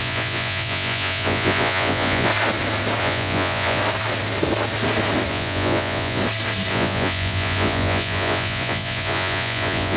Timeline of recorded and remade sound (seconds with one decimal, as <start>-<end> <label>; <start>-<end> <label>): 0.0-2.3 remade; 2.3-3.0 recorded; 3.0-3.8 remade; 3.8-5.3 recorded; 5.3-6.2 remade; 6.2-6.7 recorded; 6.7-10.0 remade